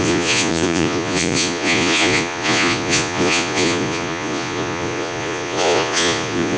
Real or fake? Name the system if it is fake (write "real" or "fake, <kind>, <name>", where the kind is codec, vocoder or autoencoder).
fake, vocoder, Vocos